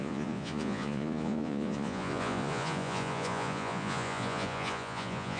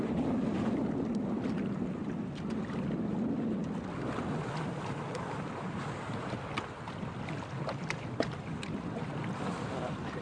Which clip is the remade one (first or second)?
first